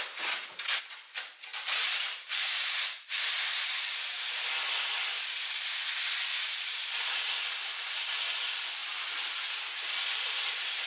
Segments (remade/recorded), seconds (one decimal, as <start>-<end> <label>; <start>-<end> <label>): 0.0-1.5 recorded; 1.5-3.4 remade; 3.4-10.9 recorded

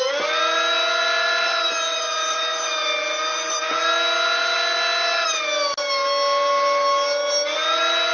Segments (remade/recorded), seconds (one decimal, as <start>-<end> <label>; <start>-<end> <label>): 0.0-1.9 recorded; 1.9-3.6 remade; 3.6-8.1 recorded

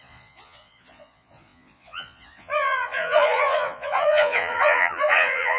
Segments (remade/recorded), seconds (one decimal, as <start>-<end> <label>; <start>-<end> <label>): 0.0-5.6 remade